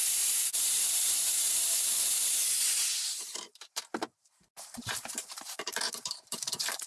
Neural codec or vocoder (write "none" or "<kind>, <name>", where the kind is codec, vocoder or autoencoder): vocoder, BigVGAN v2